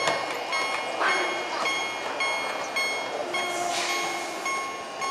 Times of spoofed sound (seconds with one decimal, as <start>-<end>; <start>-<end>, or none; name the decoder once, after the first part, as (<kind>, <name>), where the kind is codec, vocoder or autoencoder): 1.1-1.8 (vocoder, BigVGAN v2); 3.2-3.7